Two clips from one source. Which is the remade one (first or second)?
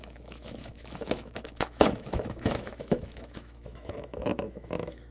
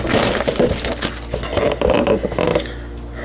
first